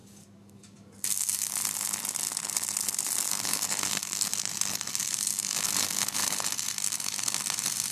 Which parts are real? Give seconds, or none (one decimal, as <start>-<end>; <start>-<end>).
1.6-3.3; 4.3-5.0; 6.2-7.9